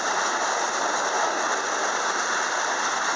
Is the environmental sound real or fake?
real